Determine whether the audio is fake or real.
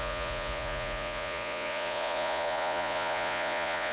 fake